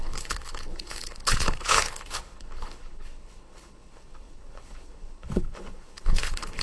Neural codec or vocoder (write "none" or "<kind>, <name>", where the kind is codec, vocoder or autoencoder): codec, HILCodec